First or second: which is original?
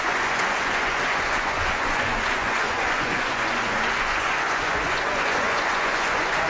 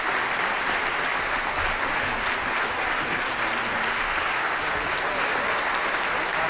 second